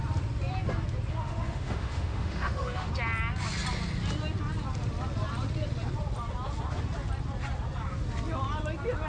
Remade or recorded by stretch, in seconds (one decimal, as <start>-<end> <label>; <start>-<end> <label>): 0.0-1.2 recorded; 1.2-2.9 remade; 2.9-9.1 recorded